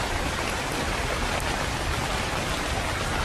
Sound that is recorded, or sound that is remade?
recorded